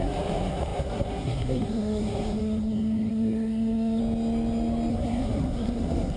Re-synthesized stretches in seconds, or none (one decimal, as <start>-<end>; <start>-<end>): 0.0-4.0; 4.9-6.2